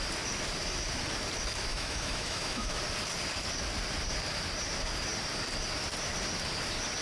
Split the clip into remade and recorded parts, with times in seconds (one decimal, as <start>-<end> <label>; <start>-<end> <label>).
0.0-1.7 recorded; 1.7-2.8 remade; 2.8-7.0 recorded